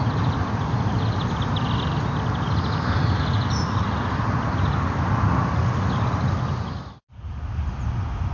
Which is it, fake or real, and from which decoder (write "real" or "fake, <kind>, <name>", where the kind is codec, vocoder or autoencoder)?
real